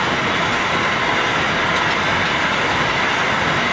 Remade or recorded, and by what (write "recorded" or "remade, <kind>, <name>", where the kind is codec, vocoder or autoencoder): recorded